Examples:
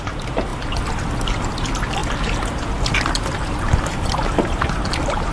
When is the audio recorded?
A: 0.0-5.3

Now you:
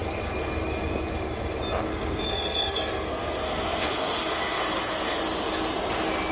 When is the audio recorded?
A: 0.0-1.9; 5.2-6.3

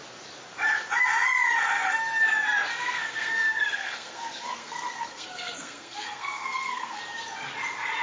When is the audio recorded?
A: 0.0-2.7; 7.0-8.0

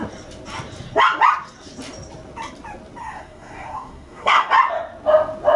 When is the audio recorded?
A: 0.0-3.0; 4.5-5.6

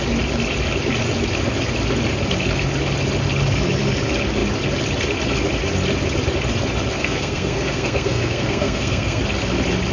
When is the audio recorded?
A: 0.0-7.0; 9.2-9.9

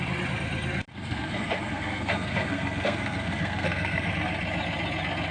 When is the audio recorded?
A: 0.0-0.9; 4.1-5.3

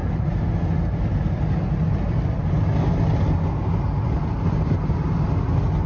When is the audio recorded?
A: 0.0-5.9